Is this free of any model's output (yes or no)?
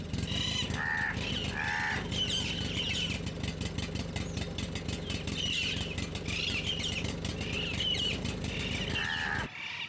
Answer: yes